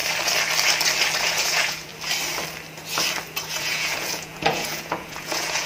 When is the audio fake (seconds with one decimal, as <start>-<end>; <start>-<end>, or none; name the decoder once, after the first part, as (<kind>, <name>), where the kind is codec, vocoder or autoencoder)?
1.2-1.9 (vocoder, Vocos); 3.6-5.7